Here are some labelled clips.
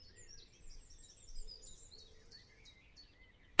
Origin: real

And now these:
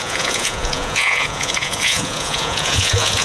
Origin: fake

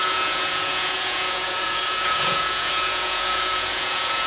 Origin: fake